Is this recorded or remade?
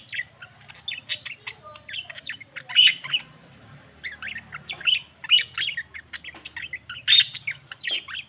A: recorded